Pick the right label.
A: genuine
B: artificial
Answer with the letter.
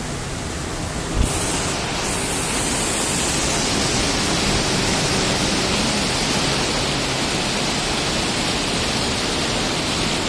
A